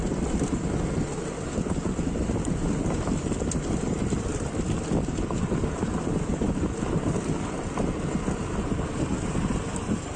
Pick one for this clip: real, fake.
real